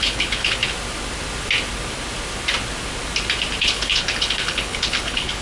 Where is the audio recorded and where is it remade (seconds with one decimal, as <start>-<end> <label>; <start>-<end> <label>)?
0.0-0.6 remade; 0.6-3.6 recorded; 3.6-5.4 remade